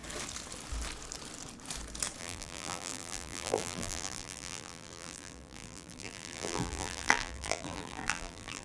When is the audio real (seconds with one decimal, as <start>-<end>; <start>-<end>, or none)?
0.0-2.2